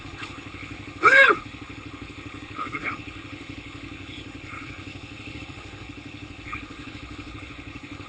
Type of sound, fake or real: fake